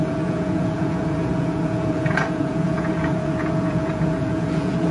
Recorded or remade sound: remade